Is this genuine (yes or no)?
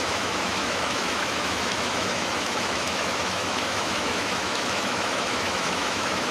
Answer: no